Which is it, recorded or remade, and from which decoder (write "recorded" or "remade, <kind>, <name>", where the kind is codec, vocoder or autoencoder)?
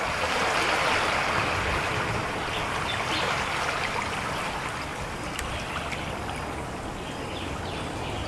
recorded